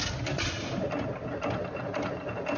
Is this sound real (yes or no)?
yes